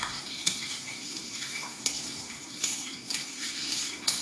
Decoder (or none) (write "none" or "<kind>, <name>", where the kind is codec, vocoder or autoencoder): codec, SNAC